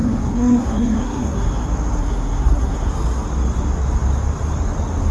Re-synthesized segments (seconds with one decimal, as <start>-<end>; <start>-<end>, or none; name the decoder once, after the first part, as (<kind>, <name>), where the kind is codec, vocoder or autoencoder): 0.0-1.5 (codec, SNAC); 2.0-2.9